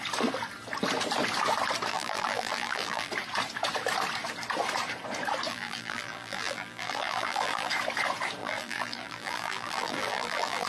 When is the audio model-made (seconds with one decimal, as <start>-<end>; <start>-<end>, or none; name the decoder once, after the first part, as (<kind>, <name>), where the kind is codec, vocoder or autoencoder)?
1.9-3.1 (vocoder, BigVGAN v2); 5.5-7.7; 8.4-10.7